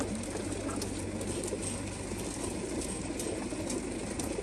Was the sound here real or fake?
real